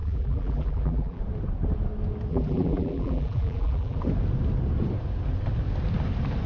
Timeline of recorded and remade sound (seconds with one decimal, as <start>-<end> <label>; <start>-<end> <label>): 0.0-1.2 remade; 1.2-2.3 recorded; 2.3-4.0 remade; 4.0-6.5 recorded